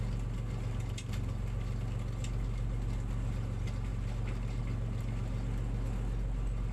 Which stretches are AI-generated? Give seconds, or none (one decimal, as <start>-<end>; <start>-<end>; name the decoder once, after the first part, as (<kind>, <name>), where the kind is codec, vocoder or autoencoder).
none